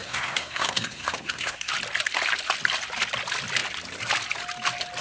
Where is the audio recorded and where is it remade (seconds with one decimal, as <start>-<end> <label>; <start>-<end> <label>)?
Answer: 0.0-1.7 remade; 1.7-5.0 recorded

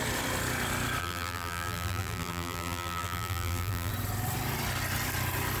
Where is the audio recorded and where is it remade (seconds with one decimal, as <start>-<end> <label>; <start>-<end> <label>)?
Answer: 0.0-1.0 recorded; 1.0-3.9 remade; 3.9-5.6 recorded

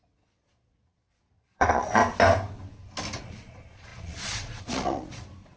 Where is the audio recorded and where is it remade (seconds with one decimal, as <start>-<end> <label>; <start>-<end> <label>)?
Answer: 0.0-2.0 remade; 2.0-3.2 recorded; 3.2-5.6 remade

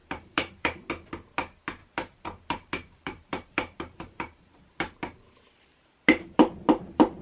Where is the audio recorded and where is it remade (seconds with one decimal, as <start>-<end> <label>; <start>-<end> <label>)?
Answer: 0.0-0.9 remade; 0.9-1.8 recorded; 1.8-4.8 remade; 4.8-7.2 recorded

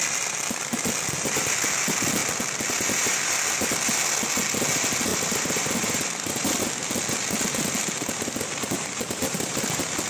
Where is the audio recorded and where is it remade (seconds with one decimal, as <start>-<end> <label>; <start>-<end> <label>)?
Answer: 0.0-5.1 recorded; 5.1-6.6 remade; 6.6-10.1 recorded